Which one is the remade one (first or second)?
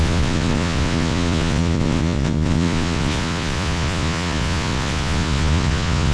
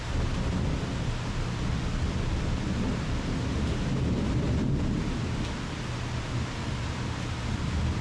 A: first